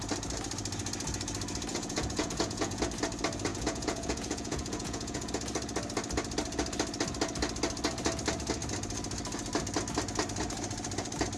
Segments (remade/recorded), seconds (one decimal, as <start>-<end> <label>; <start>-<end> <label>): 0.0-1.7 recorded; 1.7-2.8 remade; 2.8-3.5 recorded; 3.5-5.3 remade; 5.3-11.4 recorded